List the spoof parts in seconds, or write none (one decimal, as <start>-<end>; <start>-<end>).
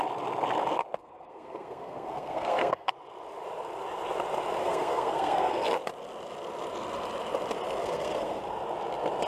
1.0-2.9; 4.6-5.7; 7.8-8.4